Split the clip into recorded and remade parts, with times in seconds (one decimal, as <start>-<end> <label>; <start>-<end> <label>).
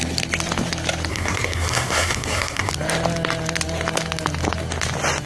0.0-1.1 recorded; 1.1-2.7 remade; 2.7-5.3 recorded